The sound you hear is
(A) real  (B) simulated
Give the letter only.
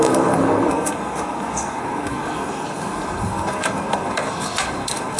B